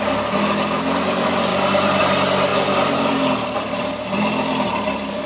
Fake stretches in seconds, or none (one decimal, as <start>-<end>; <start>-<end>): 1.5-2.0; 2.5-5.3